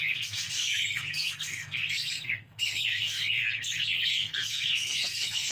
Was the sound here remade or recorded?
remade